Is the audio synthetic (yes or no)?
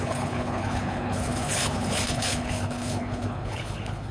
yes